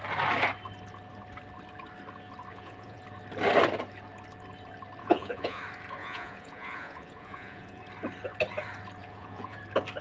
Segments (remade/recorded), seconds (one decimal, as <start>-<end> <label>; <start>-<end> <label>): 0.0-2.5 recorded; 2.5-3.0 remade; 3.0-5.0 recorded; 5.0-5.6 remade; 5.6-6.0 recorded; 6.0-7.8 remade; 7.8-9.0 recorded; 9.0-9.6 remade; 9.6-10.0 recorded